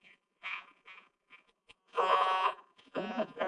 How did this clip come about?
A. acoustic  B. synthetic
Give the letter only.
B